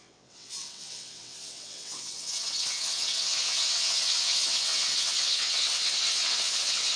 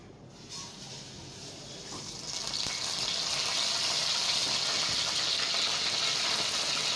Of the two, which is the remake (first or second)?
first